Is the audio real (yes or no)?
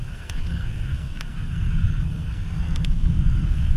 no